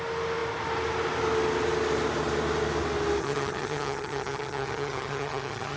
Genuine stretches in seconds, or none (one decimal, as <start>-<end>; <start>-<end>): 0.0-3.2